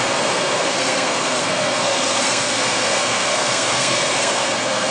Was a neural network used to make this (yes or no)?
yes